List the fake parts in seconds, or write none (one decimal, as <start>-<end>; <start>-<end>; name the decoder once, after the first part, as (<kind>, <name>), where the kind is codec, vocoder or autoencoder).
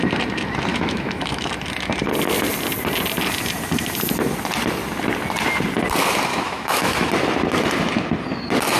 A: 0.7-1.5 (autoencoder, DAC-VAE); 6.3-7.1